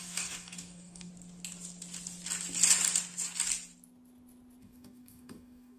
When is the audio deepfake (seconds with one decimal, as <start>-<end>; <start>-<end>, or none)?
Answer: 0.0-1.1; 4.6-5.8